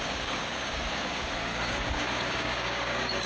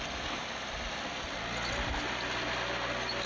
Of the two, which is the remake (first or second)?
first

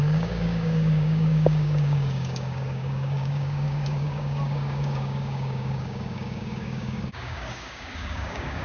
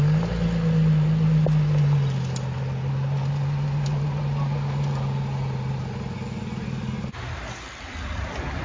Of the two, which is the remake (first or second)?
first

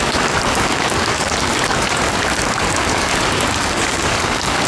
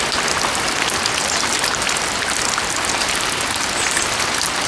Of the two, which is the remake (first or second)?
first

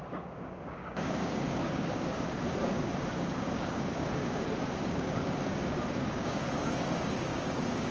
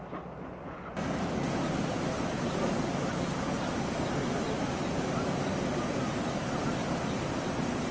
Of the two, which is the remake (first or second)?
first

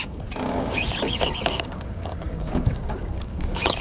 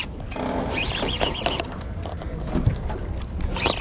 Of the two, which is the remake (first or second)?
first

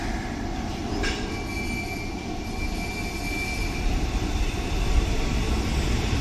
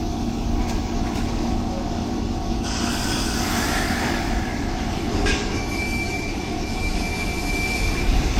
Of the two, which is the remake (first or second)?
second